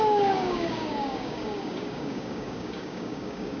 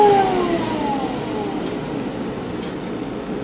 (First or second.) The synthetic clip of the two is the first